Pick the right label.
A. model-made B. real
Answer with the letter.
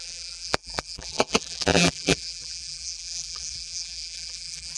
A